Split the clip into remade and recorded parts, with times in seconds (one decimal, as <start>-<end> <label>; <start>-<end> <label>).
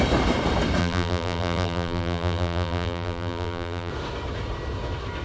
0.0-0.8 recorded; 0.8-3.9 remade; 3.9-5.2 recorded